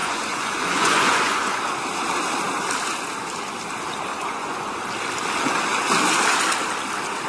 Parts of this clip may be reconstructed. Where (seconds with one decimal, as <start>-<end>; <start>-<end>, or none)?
0.0-1.6; 4.1-4.7